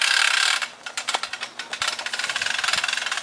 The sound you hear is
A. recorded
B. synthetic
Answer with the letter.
A